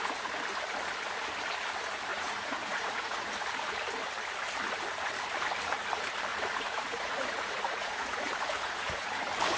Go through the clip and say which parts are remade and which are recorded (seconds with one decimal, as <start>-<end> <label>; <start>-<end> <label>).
0.0-2.1 recorded; 2.1-3.3 remade; 3.3-6.3 recorded; 6.3-9.2 remade; 9.2-9.6 recorded